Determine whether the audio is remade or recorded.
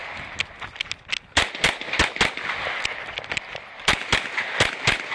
recorded